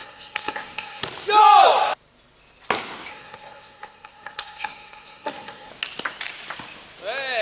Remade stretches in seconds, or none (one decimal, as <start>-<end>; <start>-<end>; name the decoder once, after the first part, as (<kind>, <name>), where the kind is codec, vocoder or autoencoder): 0.0-1.0 (codec, SNAC); 3.1-5.7